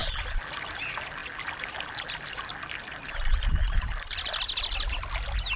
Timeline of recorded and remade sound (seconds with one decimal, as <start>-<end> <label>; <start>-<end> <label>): 0.0-1.2 recorded; 1.2-4.6 remade; 4.6-5.6 recorded